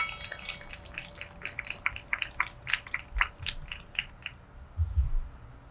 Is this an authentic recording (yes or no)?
yes